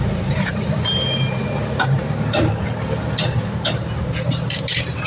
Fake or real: fake